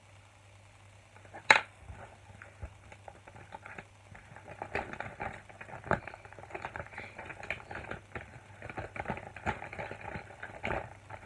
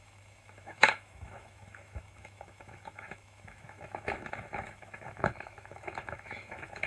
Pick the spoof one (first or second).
second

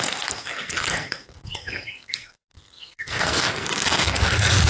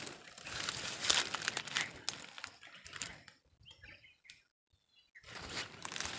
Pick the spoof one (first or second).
first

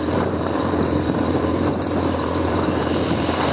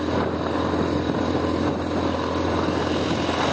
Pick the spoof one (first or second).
first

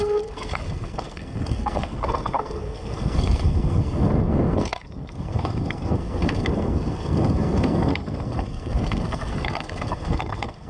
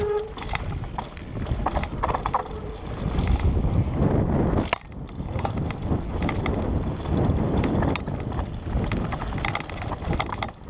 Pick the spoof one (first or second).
first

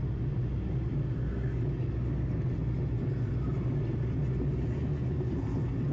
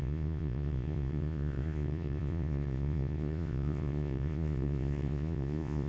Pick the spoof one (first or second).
second